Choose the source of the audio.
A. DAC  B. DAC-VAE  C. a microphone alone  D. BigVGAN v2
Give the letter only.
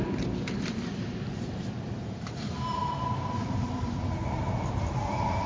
D